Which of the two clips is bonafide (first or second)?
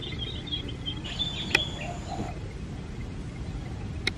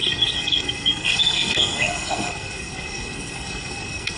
first